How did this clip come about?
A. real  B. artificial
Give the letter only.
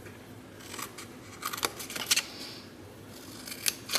A